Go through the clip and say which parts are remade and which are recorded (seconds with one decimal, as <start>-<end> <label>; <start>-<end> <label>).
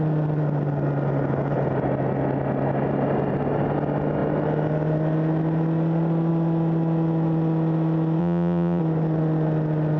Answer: 0.0-8.2 recorded; 8.2-8.8 remade; 8.8-10.0 recorded